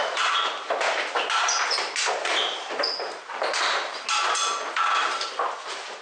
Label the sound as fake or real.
real